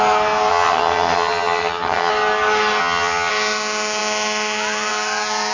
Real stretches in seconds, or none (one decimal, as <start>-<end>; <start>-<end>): 0.0-0.5; 2.1-2.8; 3.3-5.5